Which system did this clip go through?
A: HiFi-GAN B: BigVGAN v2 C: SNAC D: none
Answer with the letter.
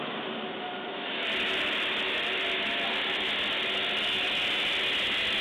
D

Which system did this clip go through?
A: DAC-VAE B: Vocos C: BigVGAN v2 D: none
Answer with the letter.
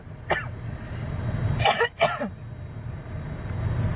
D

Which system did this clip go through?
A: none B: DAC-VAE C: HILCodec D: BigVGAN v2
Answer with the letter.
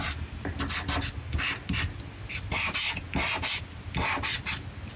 A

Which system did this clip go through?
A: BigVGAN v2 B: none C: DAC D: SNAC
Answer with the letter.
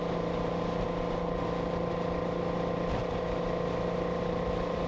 B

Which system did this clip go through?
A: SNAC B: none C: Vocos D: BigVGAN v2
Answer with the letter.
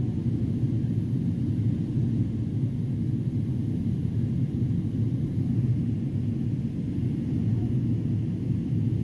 B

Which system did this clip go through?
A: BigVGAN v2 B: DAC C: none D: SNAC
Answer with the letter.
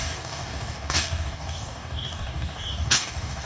B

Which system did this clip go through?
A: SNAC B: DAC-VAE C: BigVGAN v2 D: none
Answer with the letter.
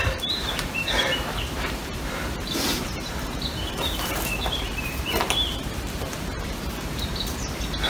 C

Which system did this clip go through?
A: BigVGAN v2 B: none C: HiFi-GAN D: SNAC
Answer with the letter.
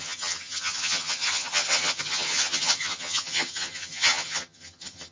C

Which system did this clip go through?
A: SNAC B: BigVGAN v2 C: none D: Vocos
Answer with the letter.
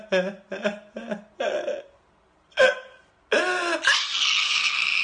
C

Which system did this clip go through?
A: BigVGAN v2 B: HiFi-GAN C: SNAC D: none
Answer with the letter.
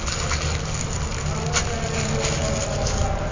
D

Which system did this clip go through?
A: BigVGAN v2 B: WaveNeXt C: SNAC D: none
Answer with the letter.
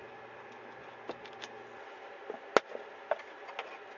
D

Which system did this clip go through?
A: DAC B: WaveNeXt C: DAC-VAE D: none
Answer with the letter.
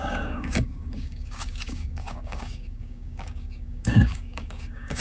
A